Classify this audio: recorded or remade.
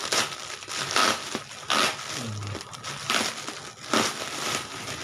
recorded